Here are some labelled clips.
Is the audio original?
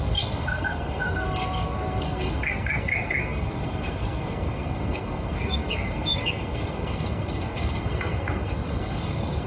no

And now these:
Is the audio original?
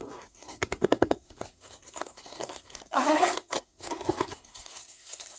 no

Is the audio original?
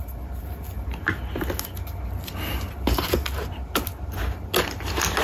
yes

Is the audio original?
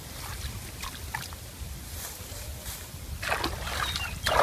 yes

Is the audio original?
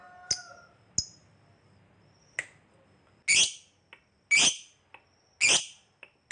yes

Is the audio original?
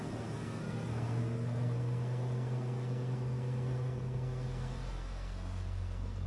no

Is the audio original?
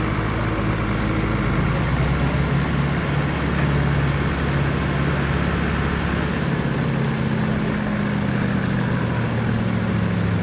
yes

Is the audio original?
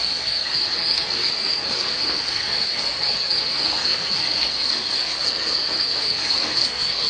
no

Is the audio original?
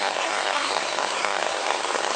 no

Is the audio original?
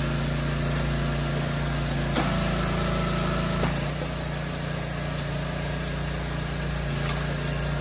yes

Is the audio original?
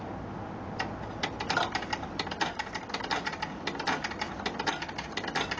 yes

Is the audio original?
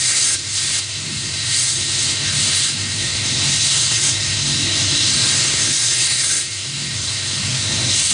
no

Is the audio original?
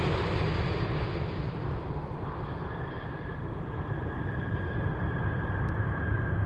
yes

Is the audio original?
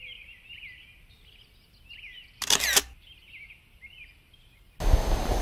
yes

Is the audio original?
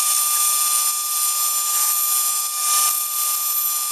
yes